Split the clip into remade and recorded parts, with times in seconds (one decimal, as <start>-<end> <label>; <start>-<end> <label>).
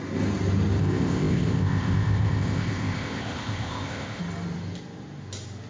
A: 0.0-0.8 recorded; 0.8-4.2 remade; 4.2-5.7 recorded